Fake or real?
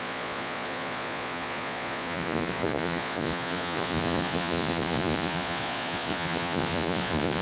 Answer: fake